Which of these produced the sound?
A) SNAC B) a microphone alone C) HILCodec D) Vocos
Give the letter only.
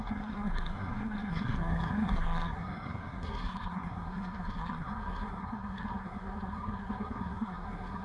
A